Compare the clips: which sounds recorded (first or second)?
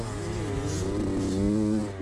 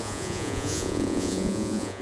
first